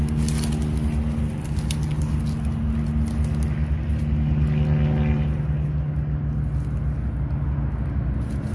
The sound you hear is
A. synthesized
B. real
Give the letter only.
B